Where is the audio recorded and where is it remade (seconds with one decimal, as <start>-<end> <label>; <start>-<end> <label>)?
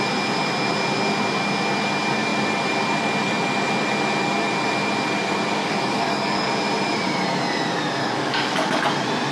0.0-5.6 recorded; 5.6-6.5 remade; 6.5-8.0 recorded; 8.0-8.8 remade; 8.8-9.3 recorded